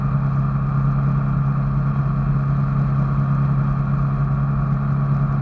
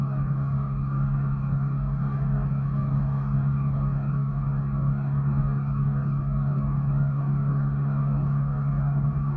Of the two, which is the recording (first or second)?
first